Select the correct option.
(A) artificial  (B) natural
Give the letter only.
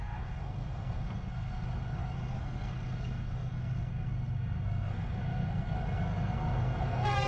A